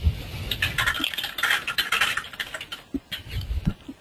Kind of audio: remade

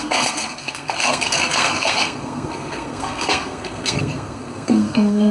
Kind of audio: remade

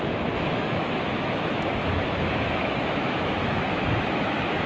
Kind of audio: remade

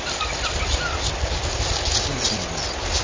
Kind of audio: recorded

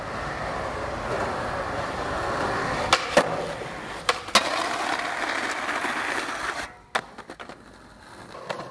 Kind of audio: recorded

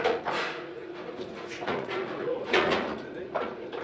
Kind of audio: remade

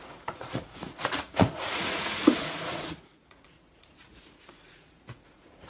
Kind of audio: remade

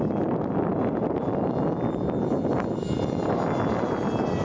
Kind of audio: recorded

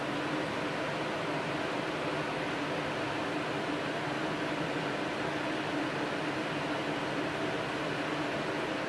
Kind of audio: recorded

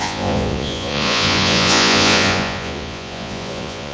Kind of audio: remade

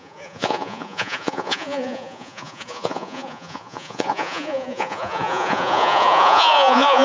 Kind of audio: remade